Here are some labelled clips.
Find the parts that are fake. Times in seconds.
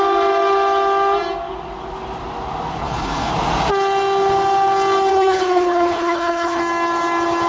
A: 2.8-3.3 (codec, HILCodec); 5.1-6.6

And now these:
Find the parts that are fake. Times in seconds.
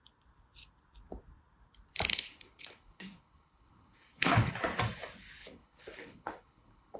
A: 2.1-4.5 (codec, HILCodec); 5.4-7.0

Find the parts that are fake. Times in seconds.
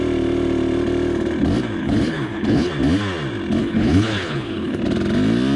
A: 1.8-2.7 (codec, HILCodec); 3.6-4.8